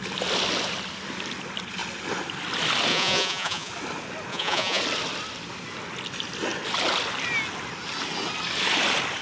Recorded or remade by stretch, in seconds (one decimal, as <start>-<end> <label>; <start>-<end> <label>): 0.0-2.9 recorded; 2.9-3.7 remade; 3.7-4.3 recorded; 4.3-4.8 remade; 4.8-9.2 recorded